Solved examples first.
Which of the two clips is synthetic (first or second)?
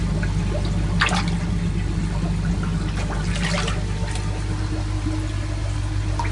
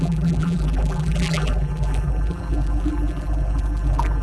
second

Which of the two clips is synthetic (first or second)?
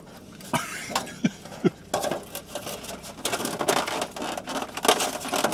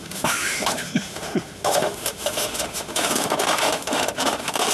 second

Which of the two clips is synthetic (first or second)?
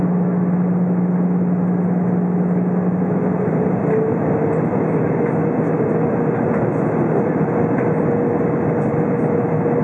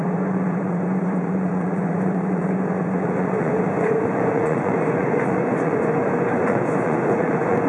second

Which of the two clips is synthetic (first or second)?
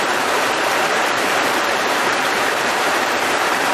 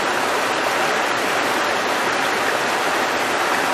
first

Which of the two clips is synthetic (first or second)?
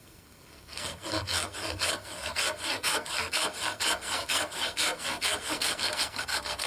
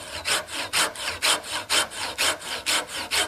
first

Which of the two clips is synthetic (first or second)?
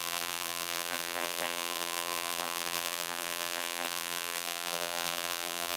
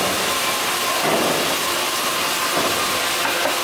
first